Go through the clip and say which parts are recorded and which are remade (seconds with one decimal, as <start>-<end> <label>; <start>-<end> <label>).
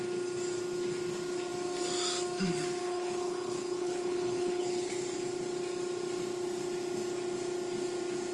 0.0-2.8 recorded; 2.8-4.9 remade; 4.9-8.3 recorded